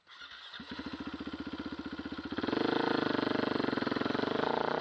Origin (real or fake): real